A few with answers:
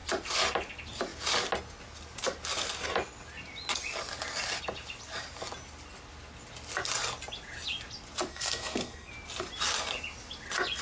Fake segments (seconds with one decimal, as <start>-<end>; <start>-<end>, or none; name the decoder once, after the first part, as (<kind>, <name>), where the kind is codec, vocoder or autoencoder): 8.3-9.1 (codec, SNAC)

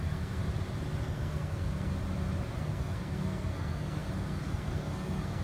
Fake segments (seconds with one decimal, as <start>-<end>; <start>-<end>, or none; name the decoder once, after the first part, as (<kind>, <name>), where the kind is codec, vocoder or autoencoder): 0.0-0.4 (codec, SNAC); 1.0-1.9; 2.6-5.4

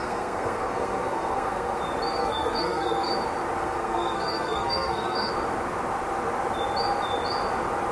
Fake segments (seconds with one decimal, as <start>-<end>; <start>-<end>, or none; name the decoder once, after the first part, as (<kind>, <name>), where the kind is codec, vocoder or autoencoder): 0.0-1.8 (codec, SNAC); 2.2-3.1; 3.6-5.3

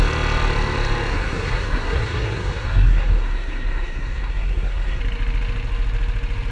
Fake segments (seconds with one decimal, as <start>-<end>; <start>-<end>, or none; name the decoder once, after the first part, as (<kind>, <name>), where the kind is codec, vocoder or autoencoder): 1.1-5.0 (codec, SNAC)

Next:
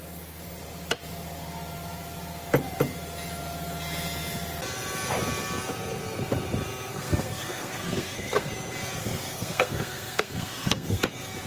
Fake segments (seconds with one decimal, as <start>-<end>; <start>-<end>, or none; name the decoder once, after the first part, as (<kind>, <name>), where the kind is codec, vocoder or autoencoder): 6.9-8.5 (codec, SNAC); 9.0-11.0

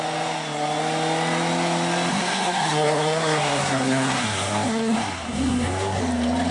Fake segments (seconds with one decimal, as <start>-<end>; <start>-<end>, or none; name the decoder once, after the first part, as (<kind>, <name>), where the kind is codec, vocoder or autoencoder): 2.1-6.0 (codec, SNAC)

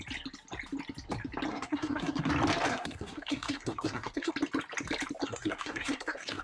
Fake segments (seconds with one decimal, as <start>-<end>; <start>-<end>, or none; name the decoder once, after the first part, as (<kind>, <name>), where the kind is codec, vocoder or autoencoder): 1.5-2.3 (codec, SNAC); 2.7-4.3; 5.2-6.4

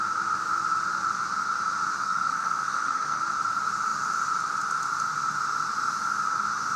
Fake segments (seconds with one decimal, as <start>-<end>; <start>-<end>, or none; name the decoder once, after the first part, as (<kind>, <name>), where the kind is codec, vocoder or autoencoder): 2.0-3.2 (codec, SNAC)